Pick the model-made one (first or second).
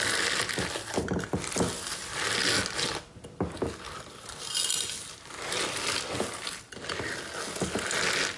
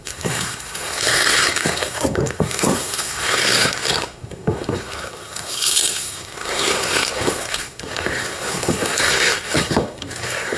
second